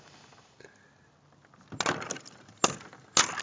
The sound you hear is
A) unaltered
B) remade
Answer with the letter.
A